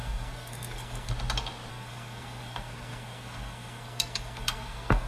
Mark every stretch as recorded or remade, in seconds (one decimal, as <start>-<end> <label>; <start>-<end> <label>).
0.0-1.1 remade; 1.1-1.7 recorded; 1.7-5.1 remade